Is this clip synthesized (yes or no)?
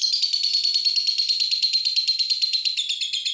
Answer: yes